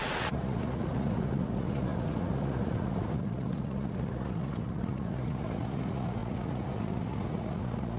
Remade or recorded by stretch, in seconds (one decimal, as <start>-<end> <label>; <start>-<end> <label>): 0.0-8.0 remade